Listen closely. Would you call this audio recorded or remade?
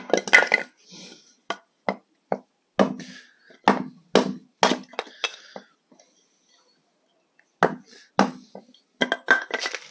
recorded